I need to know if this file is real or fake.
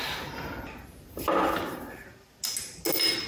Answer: real